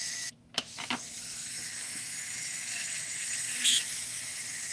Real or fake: fake